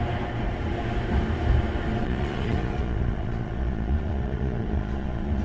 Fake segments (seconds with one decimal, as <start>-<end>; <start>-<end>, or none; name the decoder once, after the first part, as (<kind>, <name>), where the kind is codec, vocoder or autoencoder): 2.0-5.4 (vocoder, Vocos)